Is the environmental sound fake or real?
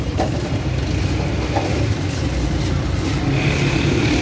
real